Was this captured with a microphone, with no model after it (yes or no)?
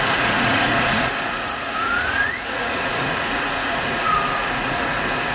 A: no